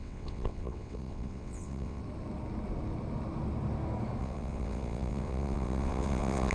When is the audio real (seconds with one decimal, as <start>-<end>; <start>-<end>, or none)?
2.0-4.2